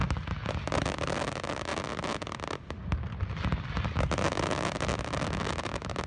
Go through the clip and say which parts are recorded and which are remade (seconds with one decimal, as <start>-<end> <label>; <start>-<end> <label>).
0.0-6.1 recorded